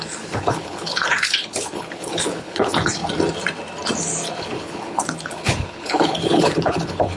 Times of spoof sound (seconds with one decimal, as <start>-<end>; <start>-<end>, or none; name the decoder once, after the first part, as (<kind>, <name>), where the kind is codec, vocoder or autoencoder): 0.0-3.0 (codec, HILCodec); 4.4-7.2